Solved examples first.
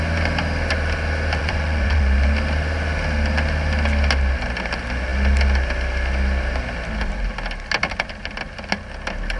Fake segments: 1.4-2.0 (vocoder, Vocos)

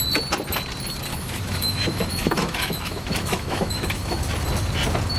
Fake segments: 1.1-4.2 (autoencoder, DAC-VAE)

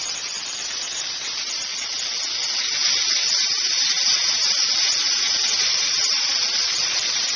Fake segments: 0.0-1.6 (vocoder, BigVGAN v2)